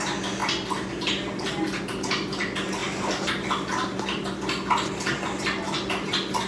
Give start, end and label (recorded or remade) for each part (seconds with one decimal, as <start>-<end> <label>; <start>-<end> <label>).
0.0-6.5 recorded